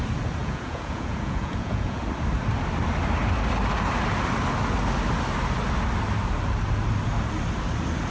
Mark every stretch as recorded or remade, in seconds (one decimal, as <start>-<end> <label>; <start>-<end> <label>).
0.0-0.4 recorded; 0.4-2.0 remade; 2.0-8.1 recorded